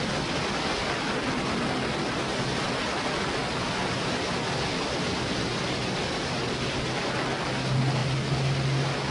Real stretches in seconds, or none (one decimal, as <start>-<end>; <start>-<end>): 0.0-9.1